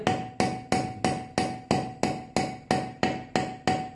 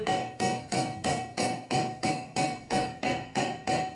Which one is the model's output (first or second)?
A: second